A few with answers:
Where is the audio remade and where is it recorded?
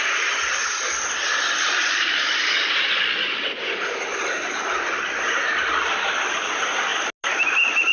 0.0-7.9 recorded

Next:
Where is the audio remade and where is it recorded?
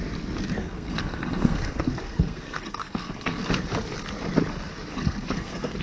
0.0-0.6 recorded; 0.6-3.4 remade; 3.4-4.9 recorded; 4.9-5.8 remade